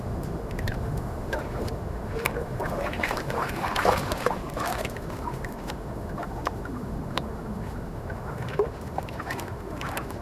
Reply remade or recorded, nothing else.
remade